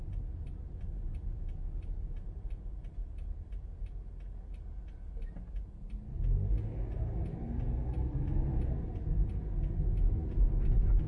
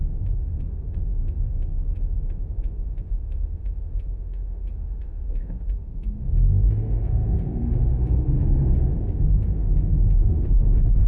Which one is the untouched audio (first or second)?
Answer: first